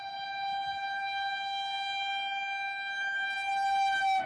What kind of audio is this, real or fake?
real